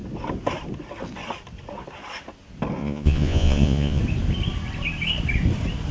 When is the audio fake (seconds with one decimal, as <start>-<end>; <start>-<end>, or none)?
2.8-4.0